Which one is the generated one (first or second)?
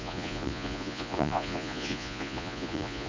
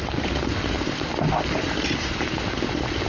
first